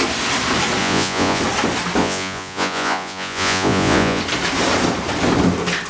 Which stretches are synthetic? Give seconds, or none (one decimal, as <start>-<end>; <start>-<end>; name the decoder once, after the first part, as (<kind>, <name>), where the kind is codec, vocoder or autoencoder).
0.8-1.4 (vocoder, Vocos); 2.0-4.2